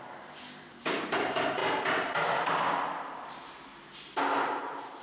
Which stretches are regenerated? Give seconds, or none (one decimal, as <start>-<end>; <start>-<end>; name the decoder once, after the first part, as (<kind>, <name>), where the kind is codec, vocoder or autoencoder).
none